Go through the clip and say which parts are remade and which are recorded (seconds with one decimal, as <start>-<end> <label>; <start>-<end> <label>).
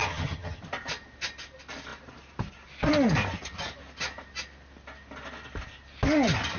0.0-0.6 remade; 0.6-6.6 recorded